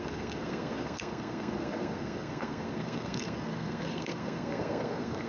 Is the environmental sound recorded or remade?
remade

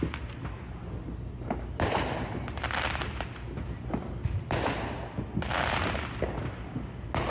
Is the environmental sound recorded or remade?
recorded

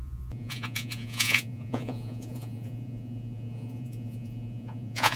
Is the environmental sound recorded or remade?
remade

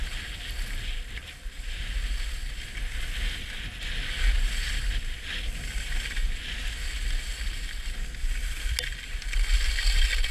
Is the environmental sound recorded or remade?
recorded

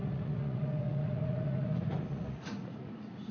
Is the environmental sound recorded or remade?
remade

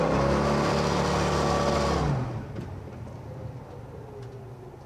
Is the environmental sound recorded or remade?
recorded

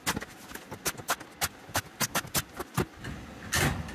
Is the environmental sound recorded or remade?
recorded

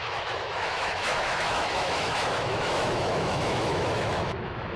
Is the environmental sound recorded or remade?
remade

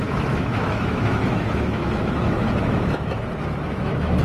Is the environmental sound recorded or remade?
remade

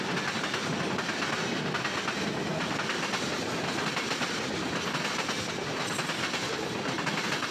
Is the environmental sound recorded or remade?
recorded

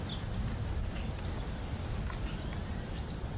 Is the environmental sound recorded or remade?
recorded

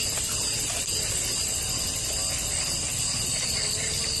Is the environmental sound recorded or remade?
recorded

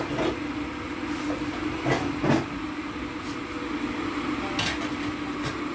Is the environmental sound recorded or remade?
recorded